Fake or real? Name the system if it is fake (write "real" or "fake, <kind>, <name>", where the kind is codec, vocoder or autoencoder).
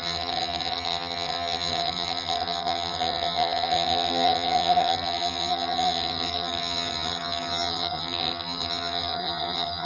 fake, vocoder, HiFi-GAN